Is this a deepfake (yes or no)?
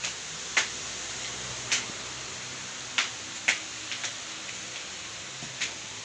yes